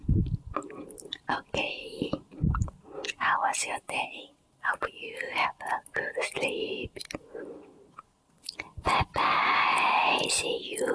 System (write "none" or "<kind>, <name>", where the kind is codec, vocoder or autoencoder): none